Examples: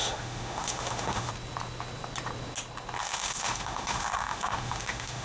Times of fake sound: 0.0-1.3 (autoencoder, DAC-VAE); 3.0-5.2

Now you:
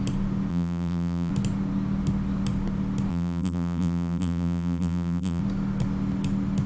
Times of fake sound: 0.5-1.3 (vocoder, BigVGAN v2); 3.1-5.4

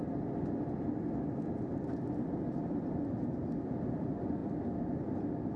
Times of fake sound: none

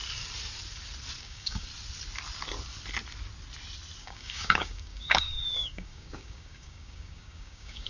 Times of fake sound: 1.2-1.7 (codec, DAC); 4.0-7.9

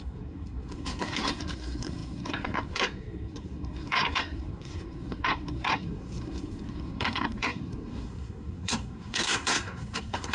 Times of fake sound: 0.0-10.3 (codec, SNAC)

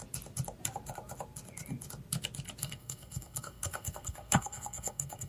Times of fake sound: 2.6-5.3 (codec, SNAC)

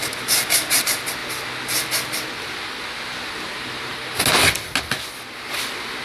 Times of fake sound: none

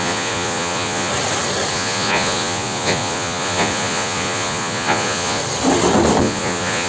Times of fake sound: 0.0-1.1 (vocoder, Vocos); 1.7-5.4; 6.2-6.9